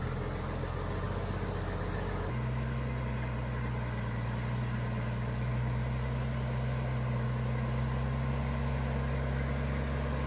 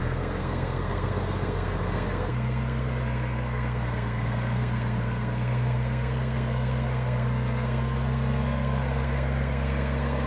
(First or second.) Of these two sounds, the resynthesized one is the second